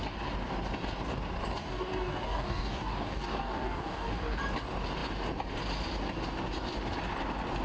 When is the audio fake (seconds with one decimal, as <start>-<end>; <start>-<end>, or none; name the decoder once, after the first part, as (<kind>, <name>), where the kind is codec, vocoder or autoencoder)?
1.6-4.4 (codec, DAC)